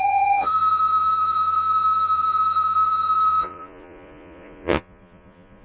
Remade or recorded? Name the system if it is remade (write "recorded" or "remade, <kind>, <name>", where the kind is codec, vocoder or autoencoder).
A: remade, vocoder, Vocos